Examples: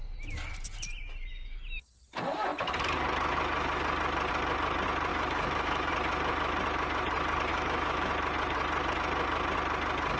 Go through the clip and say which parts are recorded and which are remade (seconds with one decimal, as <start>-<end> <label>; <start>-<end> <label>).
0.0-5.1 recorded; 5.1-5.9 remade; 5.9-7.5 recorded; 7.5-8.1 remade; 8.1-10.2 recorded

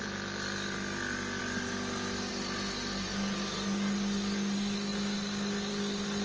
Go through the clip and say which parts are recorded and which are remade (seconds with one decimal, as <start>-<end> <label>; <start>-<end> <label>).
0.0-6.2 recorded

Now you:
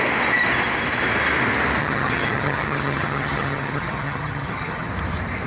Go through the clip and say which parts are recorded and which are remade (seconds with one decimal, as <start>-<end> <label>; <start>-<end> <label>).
0.0-1.8 recorded; 1.8-4.9 remade; 4.9-5.5 recorded

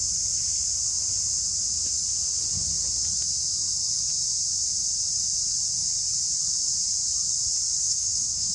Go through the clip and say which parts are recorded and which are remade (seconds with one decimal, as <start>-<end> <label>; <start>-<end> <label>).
0.0-7.8 recorded; 7.8-8.5 remade

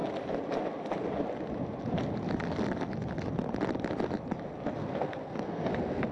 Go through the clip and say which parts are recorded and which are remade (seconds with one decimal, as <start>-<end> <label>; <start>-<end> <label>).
0.0-4.8 recorded; 4.8-6.1 remade